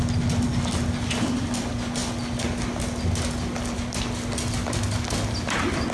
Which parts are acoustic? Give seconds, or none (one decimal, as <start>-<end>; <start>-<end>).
0.0-5.9